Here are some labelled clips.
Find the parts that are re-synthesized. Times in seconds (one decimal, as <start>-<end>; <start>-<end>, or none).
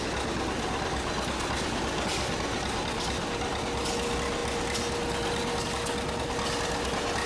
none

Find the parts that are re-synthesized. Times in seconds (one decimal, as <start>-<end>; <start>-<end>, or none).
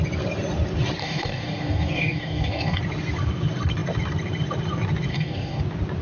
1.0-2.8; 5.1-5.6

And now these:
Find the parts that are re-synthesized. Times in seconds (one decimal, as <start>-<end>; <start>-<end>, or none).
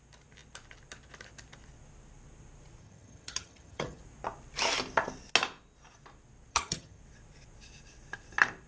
2.8-4.0; 6.5-7.0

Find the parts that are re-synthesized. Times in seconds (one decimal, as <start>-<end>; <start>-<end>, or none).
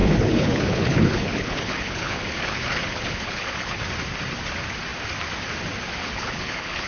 0.0-3.8; 6.0-6.9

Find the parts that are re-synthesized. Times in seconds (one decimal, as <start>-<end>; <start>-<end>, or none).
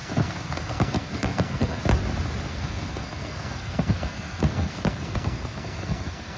0.0-1.8; 2.5-6.4